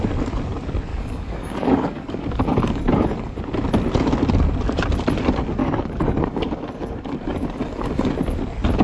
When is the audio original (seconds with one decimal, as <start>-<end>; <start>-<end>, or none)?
0.0-0.9; 3.4-5.6; 8.1-8.8